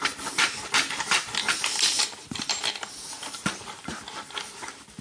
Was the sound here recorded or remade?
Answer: recorded